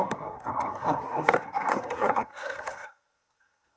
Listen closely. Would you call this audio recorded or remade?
remade